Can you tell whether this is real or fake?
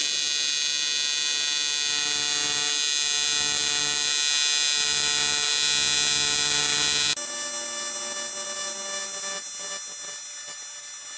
real